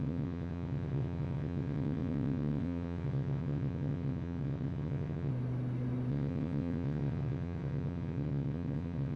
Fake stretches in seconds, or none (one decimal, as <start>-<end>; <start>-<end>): 0.0-5.3; 6.1-9.2